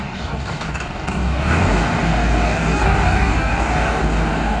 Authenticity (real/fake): fake